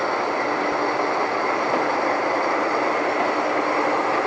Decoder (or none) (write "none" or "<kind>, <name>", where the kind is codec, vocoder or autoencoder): none